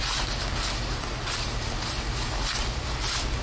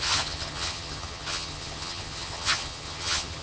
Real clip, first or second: first